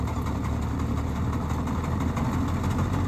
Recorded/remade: recorded